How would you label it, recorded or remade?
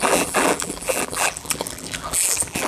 remade